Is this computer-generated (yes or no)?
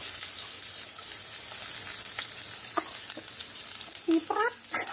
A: no